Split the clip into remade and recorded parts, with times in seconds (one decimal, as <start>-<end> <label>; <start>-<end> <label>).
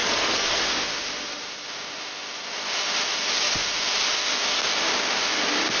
0.0-0.6 remade; 0.6-5.8 recorded